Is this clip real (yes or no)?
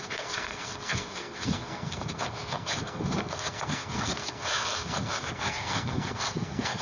no